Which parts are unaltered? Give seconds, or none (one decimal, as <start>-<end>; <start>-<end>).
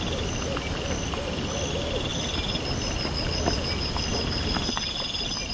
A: 0.0-5.5